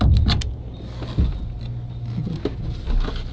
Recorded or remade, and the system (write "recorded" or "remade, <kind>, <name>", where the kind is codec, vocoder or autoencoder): recorded